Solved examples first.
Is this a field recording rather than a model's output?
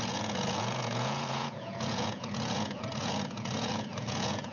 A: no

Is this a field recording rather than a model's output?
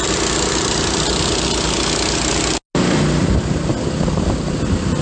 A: yes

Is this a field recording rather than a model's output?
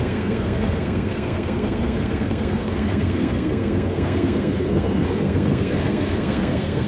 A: no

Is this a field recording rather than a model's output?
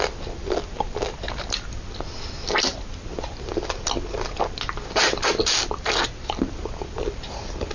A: yes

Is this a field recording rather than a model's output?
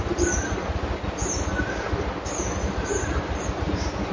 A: yes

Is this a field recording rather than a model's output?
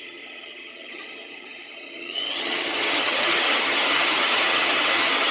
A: no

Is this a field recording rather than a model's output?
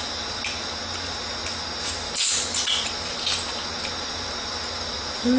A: yes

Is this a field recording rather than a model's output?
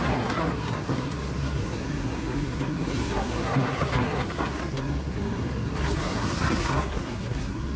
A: no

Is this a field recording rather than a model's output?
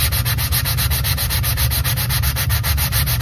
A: yes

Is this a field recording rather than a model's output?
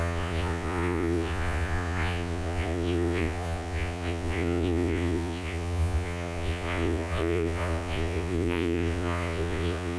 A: no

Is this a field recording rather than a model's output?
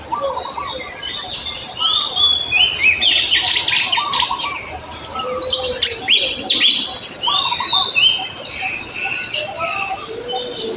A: yes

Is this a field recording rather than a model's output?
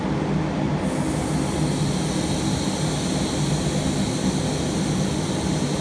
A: yes